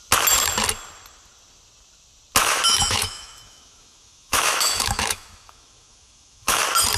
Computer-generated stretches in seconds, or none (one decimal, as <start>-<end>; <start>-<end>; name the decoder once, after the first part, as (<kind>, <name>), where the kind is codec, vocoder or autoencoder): 2.4-6.6 (autoencoder, DAC-VAE)